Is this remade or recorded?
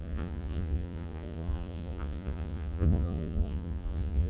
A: remade